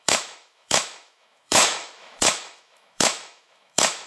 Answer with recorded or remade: remade